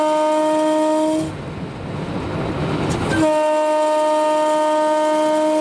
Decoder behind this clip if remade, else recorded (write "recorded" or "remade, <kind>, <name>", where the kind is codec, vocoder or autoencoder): recorded